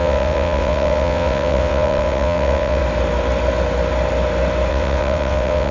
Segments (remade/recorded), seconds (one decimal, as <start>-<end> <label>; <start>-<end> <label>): 0.0-2.8 remade; 2.8-4.7 recorded; 4.7-5.7 remade